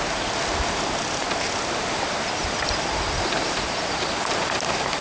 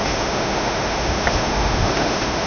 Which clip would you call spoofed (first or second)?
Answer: second